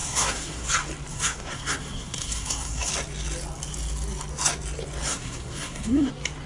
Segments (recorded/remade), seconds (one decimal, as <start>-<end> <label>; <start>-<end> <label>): 0.0-0.7 remade; 0.7-1.1 recorded; 1.1-2.9 remade; 2.9-5.1 recorded; 5.1-6.1 remade; 6.1-6.5 recorded